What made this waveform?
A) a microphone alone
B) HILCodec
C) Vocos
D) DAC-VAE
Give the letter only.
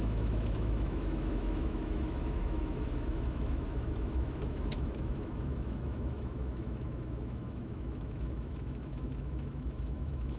D